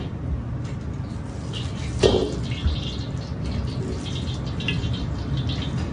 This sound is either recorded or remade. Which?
recorded